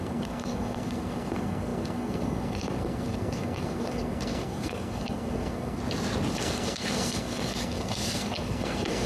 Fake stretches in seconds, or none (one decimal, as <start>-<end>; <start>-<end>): 0.0-5.8; 6.3-9.1